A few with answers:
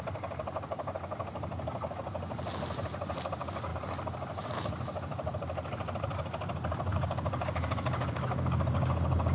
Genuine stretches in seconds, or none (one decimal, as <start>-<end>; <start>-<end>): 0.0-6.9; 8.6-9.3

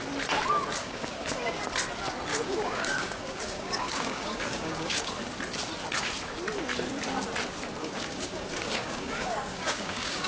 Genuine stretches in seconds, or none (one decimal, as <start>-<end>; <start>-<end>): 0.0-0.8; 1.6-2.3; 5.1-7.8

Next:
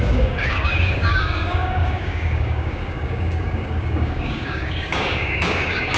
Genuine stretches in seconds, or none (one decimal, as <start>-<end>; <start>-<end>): none

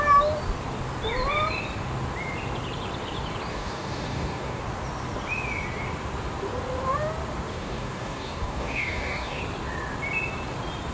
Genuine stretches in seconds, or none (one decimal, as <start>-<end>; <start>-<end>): 0.0-3.5; 4.6-7.5; 9.4-10.9

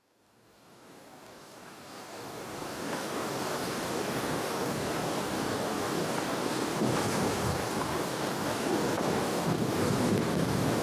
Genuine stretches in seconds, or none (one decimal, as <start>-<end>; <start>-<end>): none